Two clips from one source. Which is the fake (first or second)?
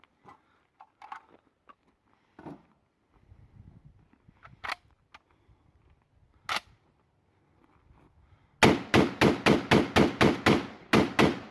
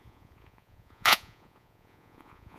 second